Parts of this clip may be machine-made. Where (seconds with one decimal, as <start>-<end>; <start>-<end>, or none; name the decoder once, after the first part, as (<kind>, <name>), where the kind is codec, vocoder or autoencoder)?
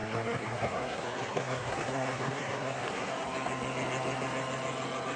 0.0-3.1 (codec, SNAC)